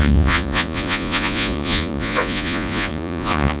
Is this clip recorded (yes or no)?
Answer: no